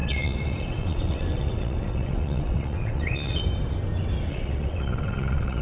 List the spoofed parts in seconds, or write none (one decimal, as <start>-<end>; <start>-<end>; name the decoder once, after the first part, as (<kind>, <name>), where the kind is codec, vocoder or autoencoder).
0.0-3.4 (vocoder, WaveNeXt); 4.3-5.6